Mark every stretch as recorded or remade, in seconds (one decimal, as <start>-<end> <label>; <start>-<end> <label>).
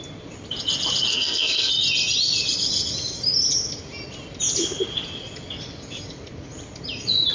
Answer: 0.0-1.1 recorded; 1.1-1.7 remade; 1.7-7.3 recorded